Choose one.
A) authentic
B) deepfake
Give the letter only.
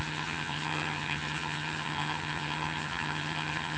B